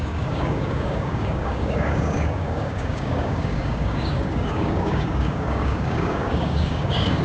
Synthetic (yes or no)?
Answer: yes